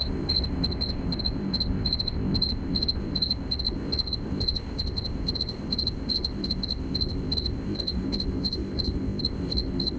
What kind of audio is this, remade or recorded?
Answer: remade